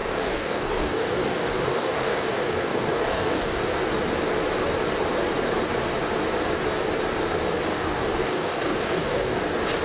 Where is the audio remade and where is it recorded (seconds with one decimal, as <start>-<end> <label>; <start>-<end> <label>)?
0.0-3.6 remade; 3.6-7.7 recorded; 7.7-9.4 remade; 9.4-9.8 recorded